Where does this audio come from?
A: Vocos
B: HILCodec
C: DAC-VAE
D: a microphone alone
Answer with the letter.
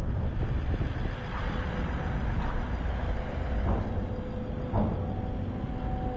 D